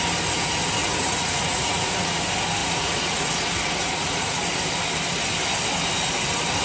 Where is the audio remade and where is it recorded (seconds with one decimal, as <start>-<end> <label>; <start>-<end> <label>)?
0.0-0.8 recorded; 0.8-2.2 remade; 2.2-2.6 recorded; 2.6-3.3 remade; 3.3-3.8 recorded; 3.8-4.4 remade; 4.4-6.6 recorded